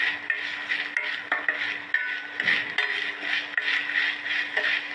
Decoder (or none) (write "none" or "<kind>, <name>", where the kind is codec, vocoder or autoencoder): none